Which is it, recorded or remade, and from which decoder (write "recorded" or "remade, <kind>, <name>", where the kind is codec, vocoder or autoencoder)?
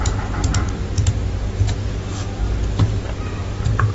recorded